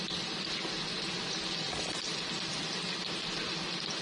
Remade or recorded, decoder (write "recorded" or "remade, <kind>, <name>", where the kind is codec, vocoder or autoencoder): recorded